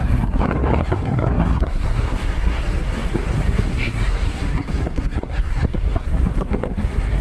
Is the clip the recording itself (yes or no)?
no